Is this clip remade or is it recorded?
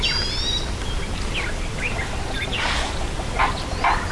recorded